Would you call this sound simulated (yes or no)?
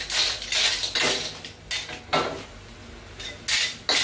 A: no